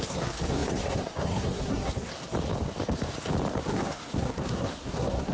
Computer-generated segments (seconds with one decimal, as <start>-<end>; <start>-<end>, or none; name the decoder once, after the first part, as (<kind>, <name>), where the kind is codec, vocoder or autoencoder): 0.0-2.1 (codec, SNAC); 3.6-5.3